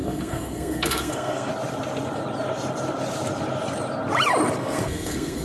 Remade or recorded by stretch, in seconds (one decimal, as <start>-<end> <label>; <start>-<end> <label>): 0.0-1.5 remade; 1.5-4.6 recorded; 4.6-5.4 remade